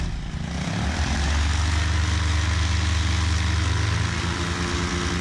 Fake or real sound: real